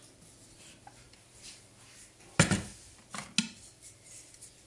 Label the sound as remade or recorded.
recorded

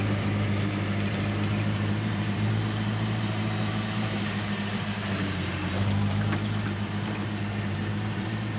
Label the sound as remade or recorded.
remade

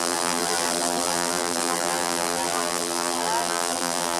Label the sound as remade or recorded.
remade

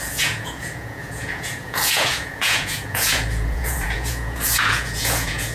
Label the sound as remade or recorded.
remade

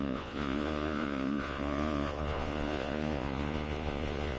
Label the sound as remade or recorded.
remade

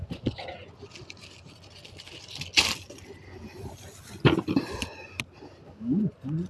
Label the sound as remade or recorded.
recorded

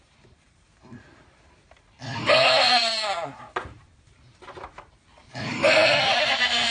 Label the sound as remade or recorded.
remade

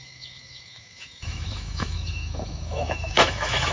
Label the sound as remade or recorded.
remade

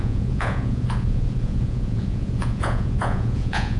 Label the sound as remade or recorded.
remade